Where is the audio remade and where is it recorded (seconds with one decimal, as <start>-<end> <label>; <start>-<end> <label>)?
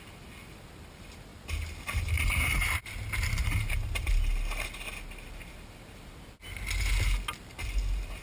0.0-8.2 recorded